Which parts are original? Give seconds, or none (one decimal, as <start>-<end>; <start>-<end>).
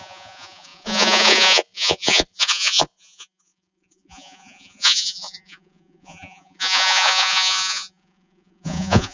none